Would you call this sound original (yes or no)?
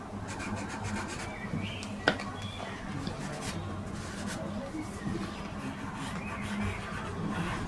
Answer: yes